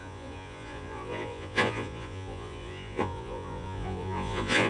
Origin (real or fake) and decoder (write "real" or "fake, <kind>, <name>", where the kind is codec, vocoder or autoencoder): fake, vocoder, Vocos